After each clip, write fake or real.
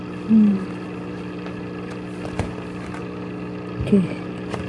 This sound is real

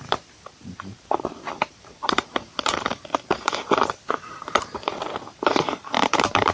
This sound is fake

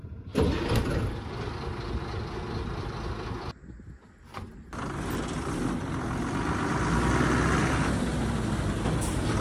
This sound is real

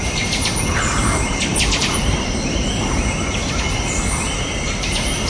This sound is fake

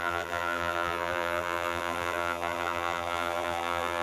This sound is fake